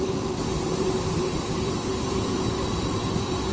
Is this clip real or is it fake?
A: fake